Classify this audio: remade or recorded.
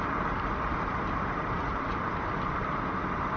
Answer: recorded